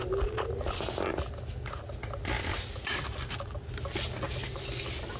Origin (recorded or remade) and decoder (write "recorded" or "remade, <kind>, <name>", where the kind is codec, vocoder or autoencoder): recorded